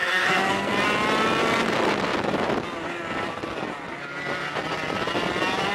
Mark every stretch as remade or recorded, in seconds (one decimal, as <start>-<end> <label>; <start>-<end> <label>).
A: 0.0-0.7 remade; 0.7-5.7 recorded